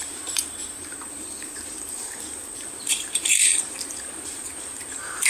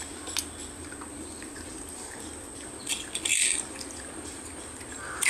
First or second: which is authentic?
second